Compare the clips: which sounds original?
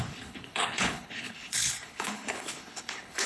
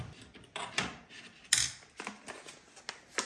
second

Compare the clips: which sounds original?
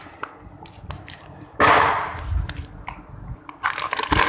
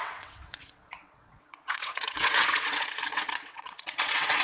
first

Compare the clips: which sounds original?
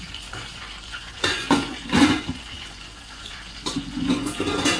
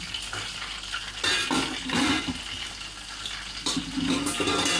second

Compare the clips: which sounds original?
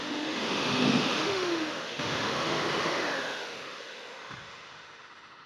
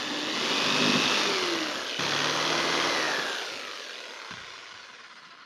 second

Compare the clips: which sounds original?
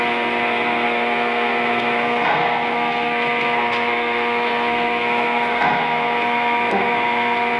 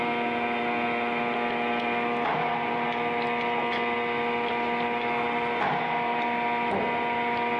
second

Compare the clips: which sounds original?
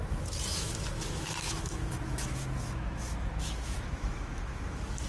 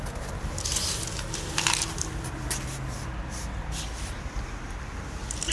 second